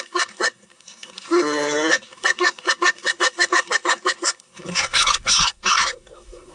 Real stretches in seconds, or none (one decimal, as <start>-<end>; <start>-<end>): none